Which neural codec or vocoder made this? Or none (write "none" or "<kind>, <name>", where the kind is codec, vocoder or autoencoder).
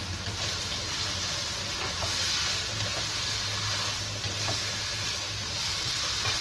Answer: none